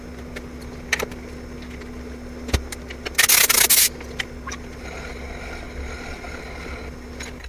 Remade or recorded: recorded